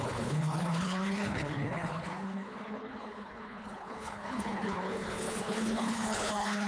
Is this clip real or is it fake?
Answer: fake